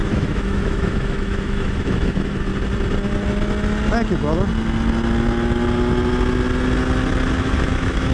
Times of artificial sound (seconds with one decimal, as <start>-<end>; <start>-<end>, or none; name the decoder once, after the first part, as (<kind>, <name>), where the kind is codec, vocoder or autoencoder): 0.0-2.5 (autoencoder, DAC-VAE); 7.4-8.1